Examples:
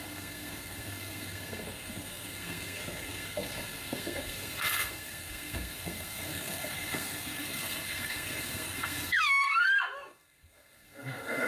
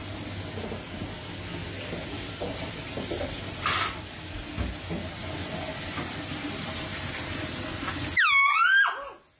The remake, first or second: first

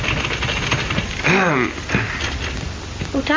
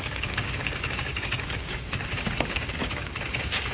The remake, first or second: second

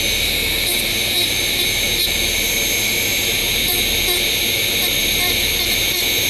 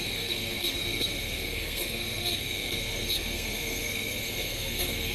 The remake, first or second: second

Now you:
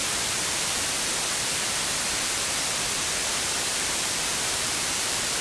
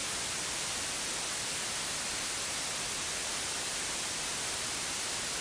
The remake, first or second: first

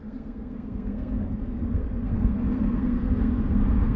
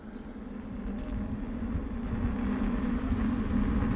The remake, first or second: first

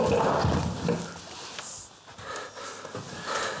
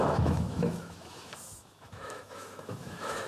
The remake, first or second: second